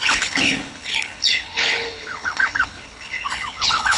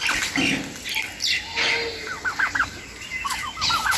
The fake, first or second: first